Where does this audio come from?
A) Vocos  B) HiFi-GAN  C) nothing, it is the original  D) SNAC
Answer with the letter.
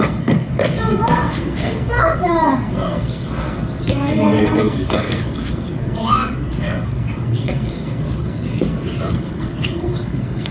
D